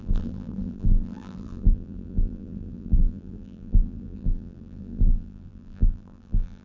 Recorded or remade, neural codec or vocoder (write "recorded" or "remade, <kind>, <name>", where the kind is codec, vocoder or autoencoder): remade, vocoder, BigVGAN v2